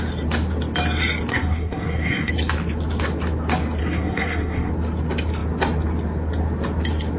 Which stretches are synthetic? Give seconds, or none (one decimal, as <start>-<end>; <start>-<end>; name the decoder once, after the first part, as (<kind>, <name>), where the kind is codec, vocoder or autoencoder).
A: 1.3-2.3 (codec, SNAC); 3.8-4.7